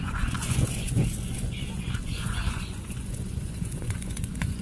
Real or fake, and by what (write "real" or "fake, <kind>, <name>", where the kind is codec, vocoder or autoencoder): fake, vocoder, Vocos